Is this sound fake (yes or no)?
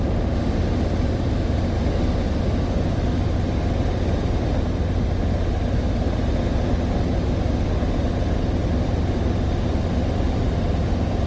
no